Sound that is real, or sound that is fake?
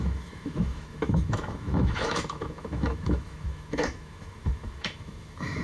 fake